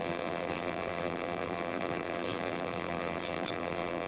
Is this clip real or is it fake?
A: fake